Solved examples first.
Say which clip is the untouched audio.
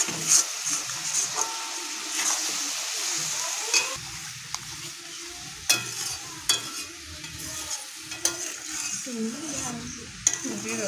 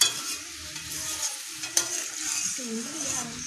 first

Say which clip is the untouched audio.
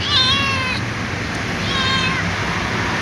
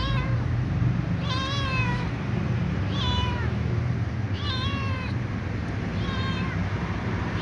first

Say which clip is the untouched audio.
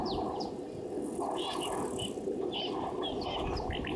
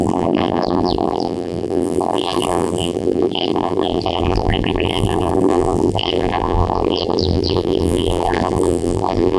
first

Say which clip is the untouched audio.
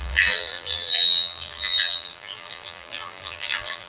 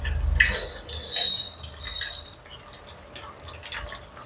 second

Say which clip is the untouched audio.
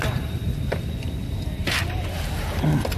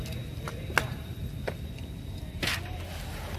second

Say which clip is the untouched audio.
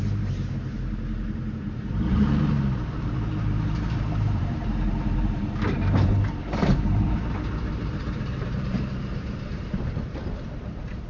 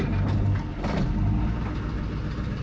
second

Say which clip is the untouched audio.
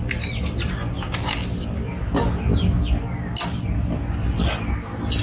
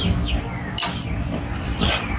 first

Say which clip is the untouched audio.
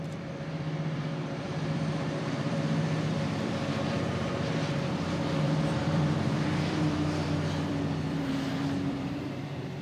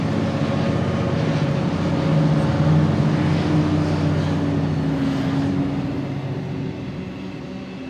second